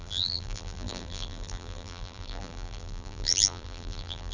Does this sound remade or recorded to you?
remade